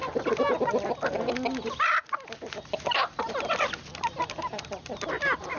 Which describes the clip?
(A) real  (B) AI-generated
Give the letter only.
A